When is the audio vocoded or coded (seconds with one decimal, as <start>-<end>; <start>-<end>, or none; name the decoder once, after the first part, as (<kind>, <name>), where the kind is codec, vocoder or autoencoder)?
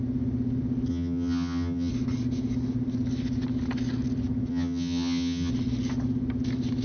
0.9-1.9 (vocoder, HiFi-GAN); 4.5-5.5